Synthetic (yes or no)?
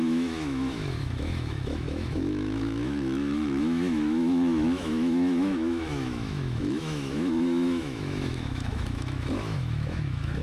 yes